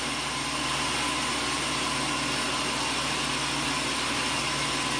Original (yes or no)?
yes